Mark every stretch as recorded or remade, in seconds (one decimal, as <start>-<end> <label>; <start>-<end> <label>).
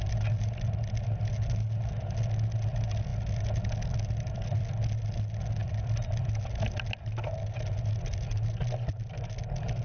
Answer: 0.0-5.6 recorded; 5.6-6.2 remade; 6.2-9.8 recorded